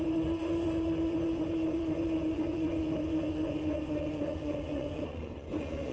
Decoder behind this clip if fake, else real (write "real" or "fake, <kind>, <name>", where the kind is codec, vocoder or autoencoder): fake, vocoder, Vocos